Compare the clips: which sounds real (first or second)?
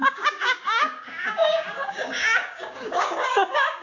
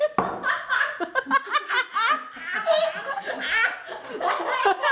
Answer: second